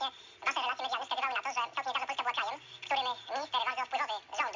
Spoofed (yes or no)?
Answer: no